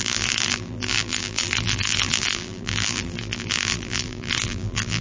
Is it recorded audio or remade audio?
remade